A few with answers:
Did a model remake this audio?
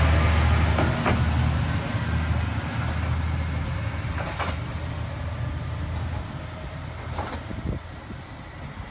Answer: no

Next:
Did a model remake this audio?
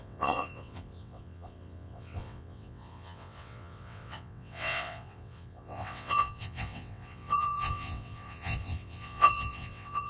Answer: yes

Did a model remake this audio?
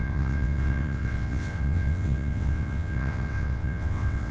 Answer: yes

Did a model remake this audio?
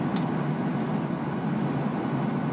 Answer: no